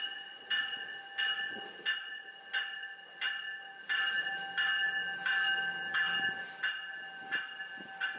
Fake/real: real